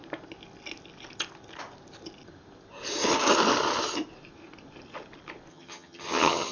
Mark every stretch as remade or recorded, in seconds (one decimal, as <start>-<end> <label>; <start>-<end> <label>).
0.0-5.5 recorded; 5.5-6.5 remade